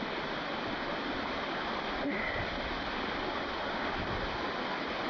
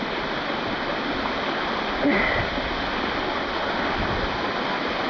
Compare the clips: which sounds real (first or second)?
second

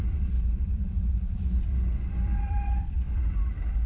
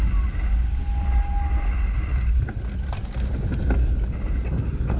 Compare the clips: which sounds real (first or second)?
second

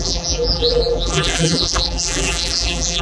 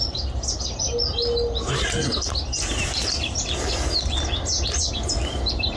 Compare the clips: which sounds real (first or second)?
second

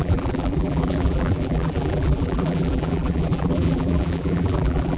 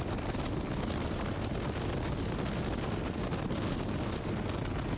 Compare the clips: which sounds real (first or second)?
second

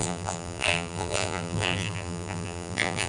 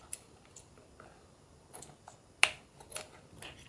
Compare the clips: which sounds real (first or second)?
second